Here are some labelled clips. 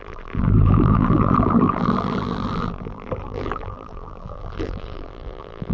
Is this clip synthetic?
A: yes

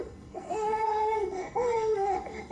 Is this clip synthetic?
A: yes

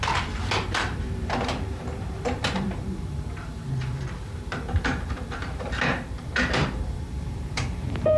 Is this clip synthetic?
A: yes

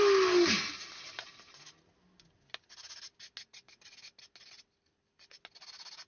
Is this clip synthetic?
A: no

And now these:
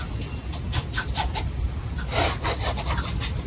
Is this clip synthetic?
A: no